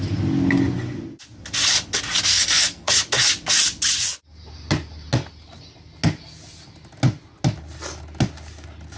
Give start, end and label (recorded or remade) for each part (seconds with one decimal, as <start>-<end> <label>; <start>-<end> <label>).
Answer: 0.0-2.3 recorded; 2.3-2.9 remade; 2.9-9.0 recorded

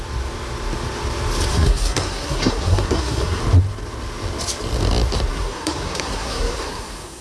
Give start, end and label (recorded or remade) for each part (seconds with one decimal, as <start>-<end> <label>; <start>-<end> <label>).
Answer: 0.0-1.5 recorded; 1.5-3.4 remade; 3.4-5.3 recorded; 5.3-7.2 remade

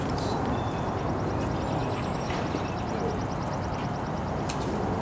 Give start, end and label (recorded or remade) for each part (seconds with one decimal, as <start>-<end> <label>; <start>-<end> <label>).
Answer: 0.0-5.0 recorded

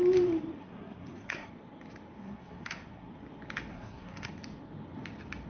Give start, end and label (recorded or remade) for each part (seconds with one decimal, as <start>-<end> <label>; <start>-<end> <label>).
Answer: 0.0-0.6 recorded; 0.6-1.5 remade; 1.5-2.2 recorded; 2.2-3.1 remade; 3.1-3.7 recorded; 3.7-4.3 remade; 4.3-5.5 recorded

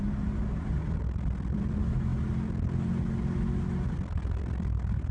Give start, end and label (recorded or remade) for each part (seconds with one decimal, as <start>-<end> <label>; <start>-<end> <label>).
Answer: 0.0-5.1 recorded

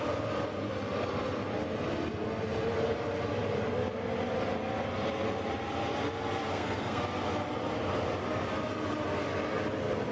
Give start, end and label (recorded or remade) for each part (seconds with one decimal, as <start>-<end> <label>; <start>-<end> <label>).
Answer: 0.0-6.5 recorded; 6.5-7.0 remade; 7.0-10.1 recorded

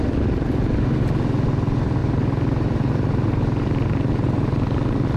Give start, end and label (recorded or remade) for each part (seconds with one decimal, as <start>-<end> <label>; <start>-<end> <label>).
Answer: 0.0-5.2 recorded